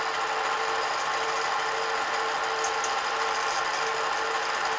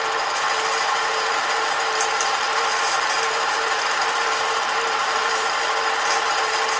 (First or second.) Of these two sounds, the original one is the first